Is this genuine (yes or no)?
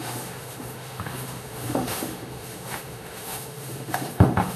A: no